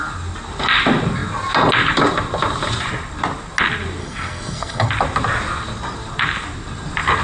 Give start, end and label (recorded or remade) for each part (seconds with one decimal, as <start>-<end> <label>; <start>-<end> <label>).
0.0-4.0 recorded; 4.0-4.9 remade; 4.9-7.2 recorded